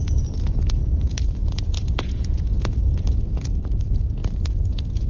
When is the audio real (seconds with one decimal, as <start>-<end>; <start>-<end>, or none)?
none

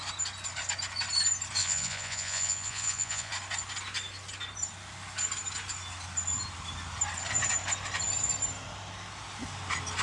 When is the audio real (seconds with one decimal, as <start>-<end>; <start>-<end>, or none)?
0.0-1.6; 3.3-10.0